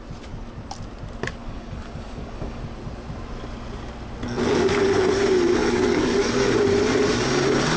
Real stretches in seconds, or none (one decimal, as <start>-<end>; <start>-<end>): 0.0-1.4; 2.6-5.6; 6.3-7.8